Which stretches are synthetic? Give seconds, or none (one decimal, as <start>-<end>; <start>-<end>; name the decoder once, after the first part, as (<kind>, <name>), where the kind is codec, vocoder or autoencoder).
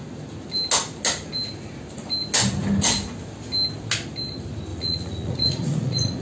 4.7-6.2 (vocoder, Vocos)